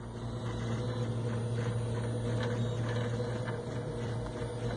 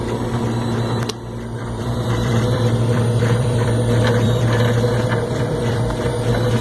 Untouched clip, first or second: first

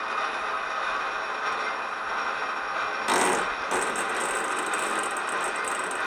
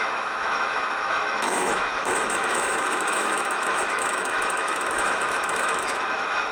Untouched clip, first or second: first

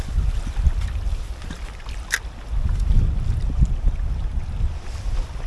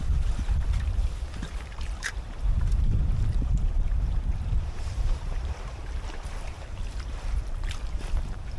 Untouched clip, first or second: first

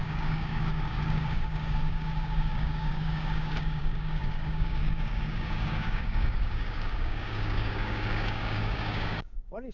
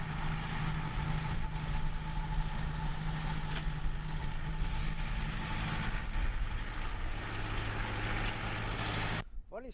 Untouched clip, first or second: second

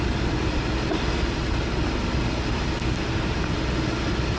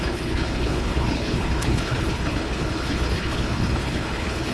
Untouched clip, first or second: first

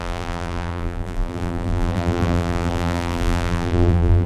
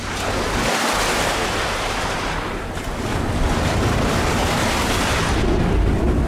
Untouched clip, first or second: second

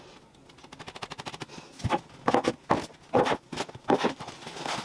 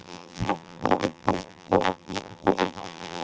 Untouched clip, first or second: first